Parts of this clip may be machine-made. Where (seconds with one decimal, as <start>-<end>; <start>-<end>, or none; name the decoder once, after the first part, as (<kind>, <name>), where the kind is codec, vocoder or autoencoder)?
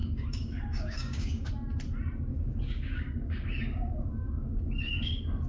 0.0-1.5 (codec, DAC); 2.3-5.5